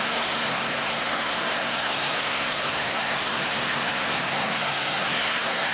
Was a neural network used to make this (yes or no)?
yes